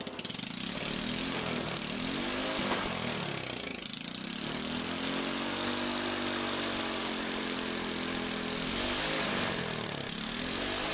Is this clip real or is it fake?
real